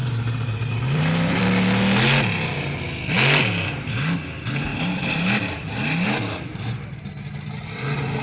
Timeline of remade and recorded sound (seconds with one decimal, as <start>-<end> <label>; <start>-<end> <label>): 0.0-1.4 remade; 1.4-4.7 recorded; 4.7-7.1 remade; 7.1-8.2 recorded